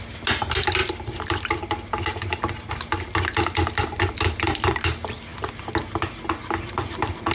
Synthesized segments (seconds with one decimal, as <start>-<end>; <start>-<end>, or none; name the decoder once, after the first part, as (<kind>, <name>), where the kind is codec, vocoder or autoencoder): none